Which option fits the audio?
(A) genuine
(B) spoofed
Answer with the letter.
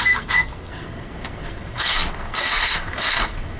B